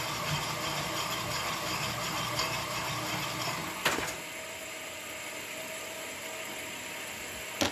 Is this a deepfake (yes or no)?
no